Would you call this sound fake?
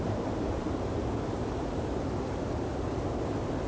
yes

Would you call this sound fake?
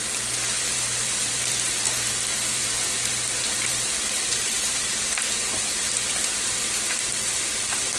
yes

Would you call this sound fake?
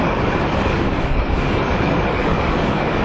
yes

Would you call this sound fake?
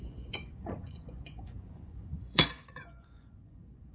yes